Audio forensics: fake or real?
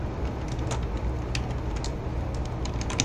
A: real